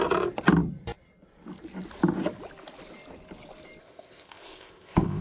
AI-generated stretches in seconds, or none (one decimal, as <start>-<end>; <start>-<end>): 3.8-5.2